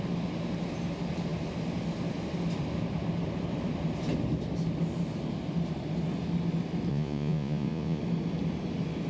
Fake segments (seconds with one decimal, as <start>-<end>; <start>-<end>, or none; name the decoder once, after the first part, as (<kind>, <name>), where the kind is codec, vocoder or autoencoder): 6.9-8.0 (vocoder, Vocos)